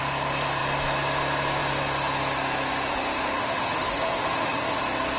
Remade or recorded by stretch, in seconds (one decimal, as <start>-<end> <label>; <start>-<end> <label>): 0.0-3.4 recorded; 3.4-4.8 remade; 4.8-5.2 recorded